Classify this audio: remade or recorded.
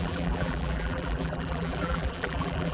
remade